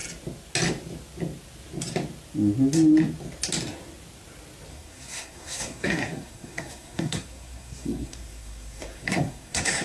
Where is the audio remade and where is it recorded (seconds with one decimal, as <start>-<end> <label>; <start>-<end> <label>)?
0.0-4.7 recorded; 4.7-9.8 remade